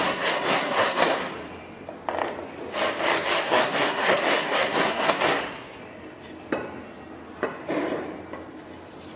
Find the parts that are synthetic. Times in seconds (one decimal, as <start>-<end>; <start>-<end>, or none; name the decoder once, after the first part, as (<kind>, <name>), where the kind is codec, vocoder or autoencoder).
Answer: 0.0-1.2 (codec, SNAC); 3.4-5.8